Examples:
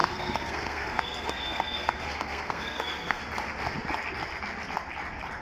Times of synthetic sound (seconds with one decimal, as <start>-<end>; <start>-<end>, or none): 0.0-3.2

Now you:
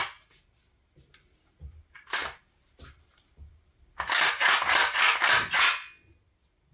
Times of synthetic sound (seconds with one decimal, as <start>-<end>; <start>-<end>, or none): none

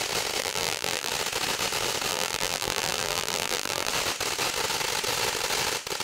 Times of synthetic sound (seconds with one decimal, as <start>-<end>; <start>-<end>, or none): 0.4-1.1; 2.1-3.9